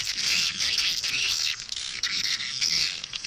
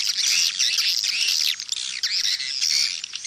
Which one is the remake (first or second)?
first